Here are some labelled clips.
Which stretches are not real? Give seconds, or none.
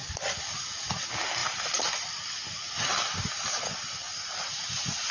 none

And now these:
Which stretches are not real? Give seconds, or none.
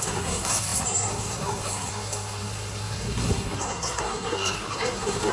0.0-5.3 (codec, SNAC)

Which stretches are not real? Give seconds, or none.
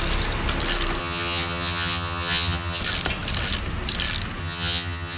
1.0-2.8 (vocoder, HiFi-GAN); 4.4-5.2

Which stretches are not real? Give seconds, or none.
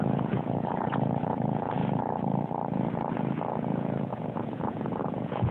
0.0-1.8 (vocoder, Vocos); 3.5-5.5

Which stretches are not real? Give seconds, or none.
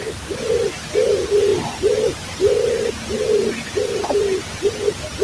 1.5-4.2 (vocoder, BigVGAN v2)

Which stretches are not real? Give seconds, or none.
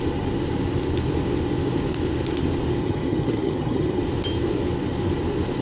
2.8-4.0 (vocoder, HiFi-GAN)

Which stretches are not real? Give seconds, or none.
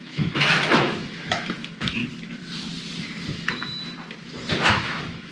0.0-2.0 (autoencoder, DAC-VAE); 3.3-3.8; 4.7-5.3